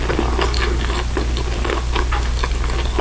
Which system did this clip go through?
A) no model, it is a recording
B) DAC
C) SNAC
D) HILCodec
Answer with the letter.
A